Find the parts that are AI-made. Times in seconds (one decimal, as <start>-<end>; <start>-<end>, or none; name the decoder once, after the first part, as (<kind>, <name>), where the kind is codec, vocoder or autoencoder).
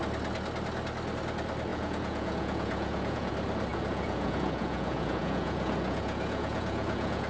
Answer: 1.7-3.3 (vocoder, Vocos); 3.7-7.3